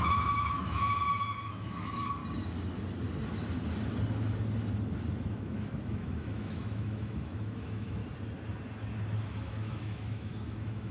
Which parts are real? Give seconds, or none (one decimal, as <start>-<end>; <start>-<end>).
2.2-5.2; 8.0-9.2